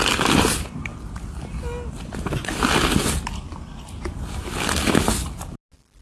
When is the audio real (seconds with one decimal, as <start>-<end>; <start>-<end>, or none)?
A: 0.0-6.0